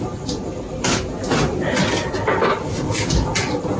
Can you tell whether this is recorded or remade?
recorded